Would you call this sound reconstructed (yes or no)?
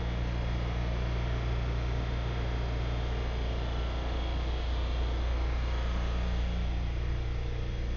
no